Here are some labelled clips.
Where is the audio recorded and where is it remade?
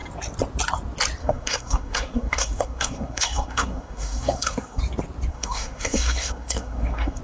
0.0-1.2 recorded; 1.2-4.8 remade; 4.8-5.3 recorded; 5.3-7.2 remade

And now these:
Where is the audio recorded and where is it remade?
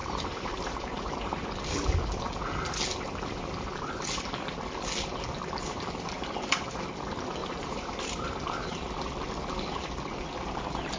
0.0-1.1 remade; 1.1-7.4 recorded; 7.4-8.3 remade; 8.3-11.0 recorded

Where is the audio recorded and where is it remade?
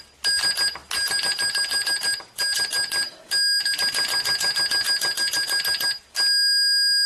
0.0-7.1 recorded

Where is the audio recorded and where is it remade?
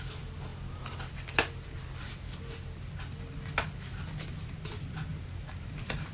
0.0-5.1 recorded; 5.1-6.1 remade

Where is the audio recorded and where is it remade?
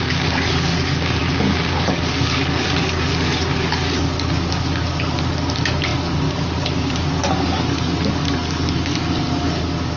0.0-10.0 remade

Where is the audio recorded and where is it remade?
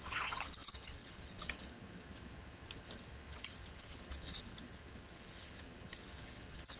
0.0-6.8 remade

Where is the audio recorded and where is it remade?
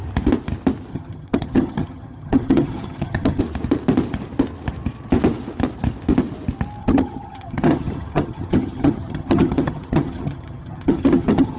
0.0-0.9 recorded; 0.9-3.4 remade; 3.4-6.8 recorded; 6.8-11.6 remade